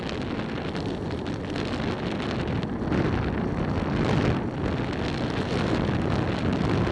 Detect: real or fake real